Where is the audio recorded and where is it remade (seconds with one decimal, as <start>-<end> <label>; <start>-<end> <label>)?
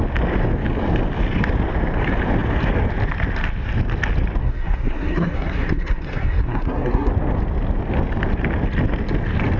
0.0-4.4 recorded; 4.4-7.1 remade; 7.1-9.6 recorded